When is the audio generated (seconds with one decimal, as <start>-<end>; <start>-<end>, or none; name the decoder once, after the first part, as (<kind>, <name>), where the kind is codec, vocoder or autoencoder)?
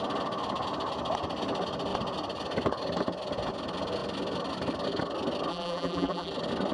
5.5-6.3 (vocoder, BigVGAN v2)